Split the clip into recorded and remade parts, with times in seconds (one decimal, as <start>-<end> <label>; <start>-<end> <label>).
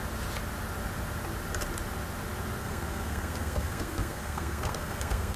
0.0-2.6 recorded; 2.6-5.4 remade